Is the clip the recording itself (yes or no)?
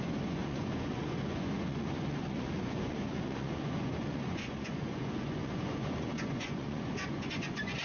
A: no